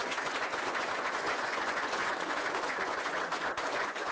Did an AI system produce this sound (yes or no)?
yes